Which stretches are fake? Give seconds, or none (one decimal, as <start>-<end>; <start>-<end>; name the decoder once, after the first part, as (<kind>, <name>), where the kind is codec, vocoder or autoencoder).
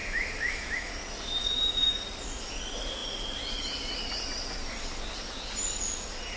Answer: 0.0-0.9 (autoencoder, DAC-VAE); 1.4-2.0